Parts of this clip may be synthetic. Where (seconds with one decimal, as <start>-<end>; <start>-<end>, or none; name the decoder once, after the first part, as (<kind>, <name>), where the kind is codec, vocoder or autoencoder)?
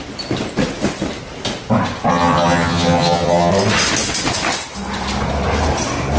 2.1-3.5 (vocoder, HiFi-GAN)